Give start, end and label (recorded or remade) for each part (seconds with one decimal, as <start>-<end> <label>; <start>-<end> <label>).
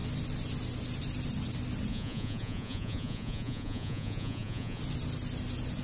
0.0-1.9 recorded; 1.9-4.8 remade; 4.8-5.8 recorded